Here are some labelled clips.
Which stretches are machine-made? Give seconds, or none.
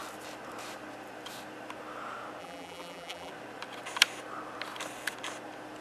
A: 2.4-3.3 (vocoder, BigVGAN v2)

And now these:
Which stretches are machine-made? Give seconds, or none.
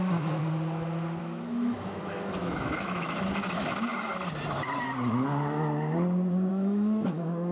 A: 0.0-0.4 (autoencoder, DAC-VAE); 1.2-3.9; 6.5-7.5